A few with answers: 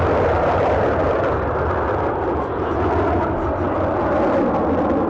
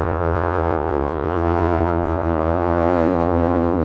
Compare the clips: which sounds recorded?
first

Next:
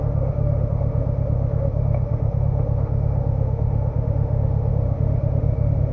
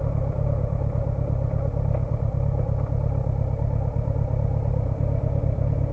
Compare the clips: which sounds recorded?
second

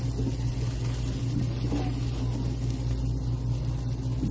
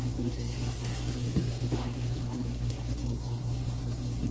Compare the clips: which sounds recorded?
first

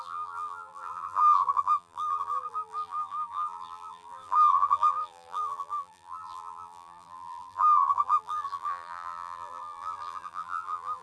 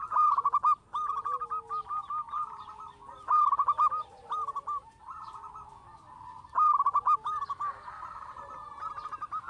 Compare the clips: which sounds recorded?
second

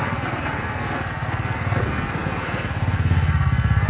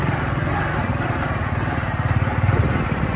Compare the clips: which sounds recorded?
second